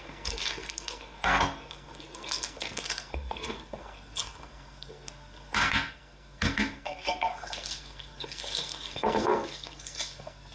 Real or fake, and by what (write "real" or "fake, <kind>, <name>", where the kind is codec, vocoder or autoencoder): fake, codec, SNAC